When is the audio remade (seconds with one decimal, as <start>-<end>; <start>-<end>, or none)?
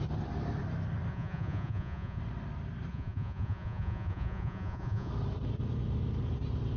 1.1-2.2; 2.9-5.1